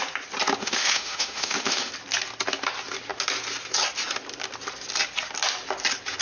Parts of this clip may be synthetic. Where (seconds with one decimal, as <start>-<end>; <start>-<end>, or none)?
0.6-1.9